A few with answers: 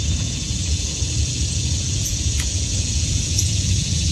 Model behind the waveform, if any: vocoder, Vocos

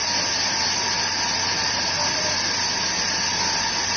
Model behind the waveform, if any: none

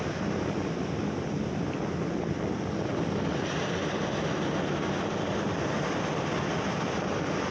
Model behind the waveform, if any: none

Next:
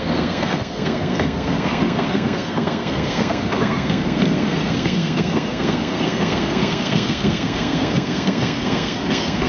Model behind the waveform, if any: codec, SNAC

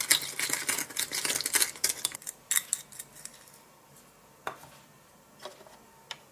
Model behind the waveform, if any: none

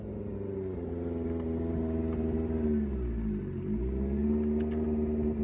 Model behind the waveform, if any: none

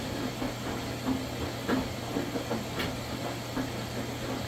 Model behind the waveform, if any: none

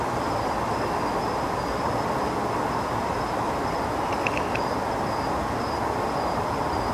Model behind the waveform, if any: none